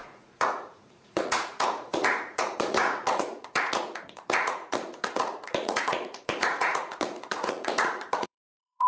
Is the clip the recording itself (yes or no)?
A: no